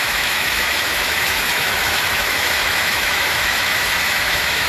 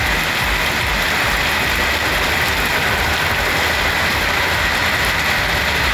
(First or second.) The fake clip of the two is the first